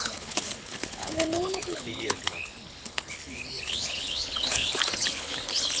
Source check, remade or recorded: remade